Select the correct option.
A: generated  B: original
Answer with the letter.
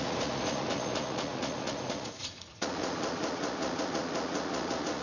A